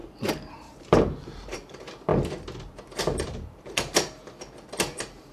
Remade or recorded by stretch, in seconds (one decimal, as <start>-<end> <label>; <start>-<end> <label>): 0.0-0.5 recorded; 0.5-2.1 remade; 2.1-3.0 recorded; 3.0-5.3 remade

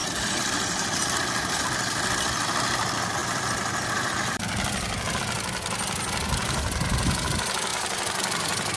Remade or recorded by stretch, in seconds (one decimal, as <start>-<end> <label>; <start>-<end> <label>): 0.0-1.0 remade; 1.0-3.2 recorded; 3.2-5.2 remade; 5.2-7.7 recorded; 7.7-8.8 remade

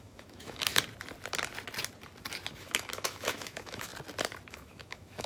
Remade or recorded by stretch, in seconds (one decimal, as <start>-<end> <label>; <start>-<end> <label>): 0.0-0.7 remade; 0.7-2.5 recorded; 2.5-3.9 remade; 3.9-4.5 recorded; 4.5-5.3 remade

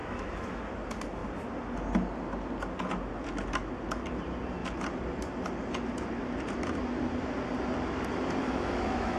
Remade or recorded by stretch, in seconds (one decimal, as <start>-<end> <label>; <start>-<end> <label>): 0.0-0.6 remade; 0.6-8.4 recorded; 8.4-9.2 remade